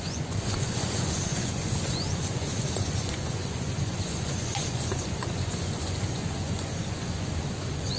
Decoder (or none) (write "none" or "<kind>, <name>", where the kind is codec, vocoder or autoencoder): vocoder, Vocos